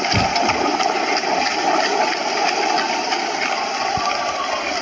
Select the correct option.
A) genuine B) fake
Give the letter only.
A